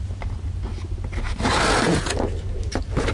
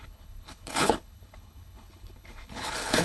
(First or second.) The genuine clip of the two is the first